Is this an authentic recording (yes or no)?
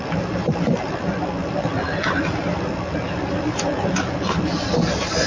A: yes